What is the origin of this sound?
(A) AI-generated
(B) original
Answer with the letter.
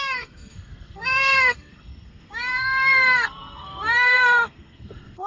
A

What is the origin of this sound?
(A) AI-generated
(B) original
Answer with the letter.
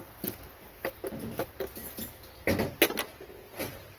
B